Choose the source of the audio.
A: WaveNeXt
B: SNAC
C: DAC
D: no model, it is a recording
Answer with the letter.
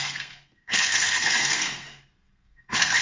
B